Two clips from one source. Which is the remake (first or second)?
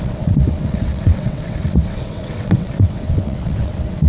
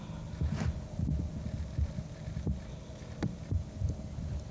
first